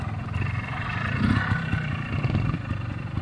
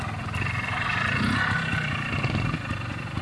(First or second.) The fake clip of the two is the first